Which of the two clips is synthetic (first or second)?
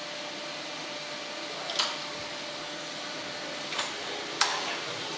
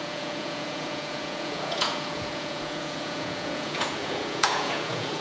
second